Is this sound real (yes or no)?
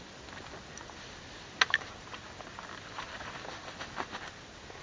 yes